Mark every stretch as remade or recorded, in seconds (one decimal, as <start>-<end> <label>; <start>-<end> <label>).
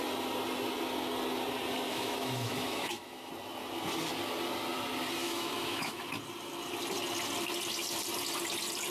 0.0-1.9 recorded; 1.9-3.3 remade; 3.3-5.2 recorded; 5.2-6.0 remade; 6.0-8.9 recorded